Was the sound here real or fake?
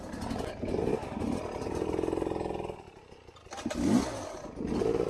real